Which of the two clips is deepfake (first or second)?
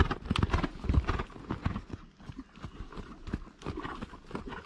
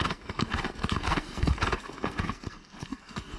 second